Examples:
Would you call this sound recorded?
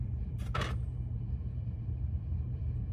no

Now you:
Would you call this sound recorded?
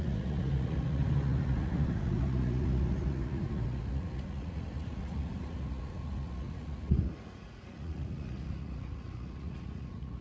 no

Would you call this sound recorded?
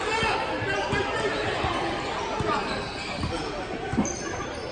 yes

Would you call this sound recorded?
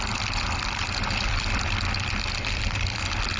yes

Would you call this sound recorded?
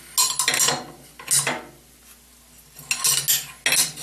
yes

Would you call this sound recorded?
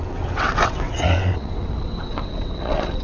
no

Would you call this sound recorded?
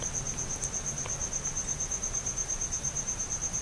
yes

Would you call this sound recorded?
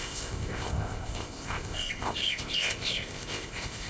no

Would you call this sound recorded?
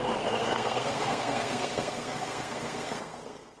no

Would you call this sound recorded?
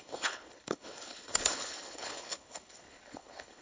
no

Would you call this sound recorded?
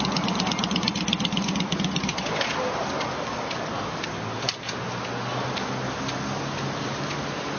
yes